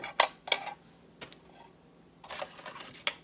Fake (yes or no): no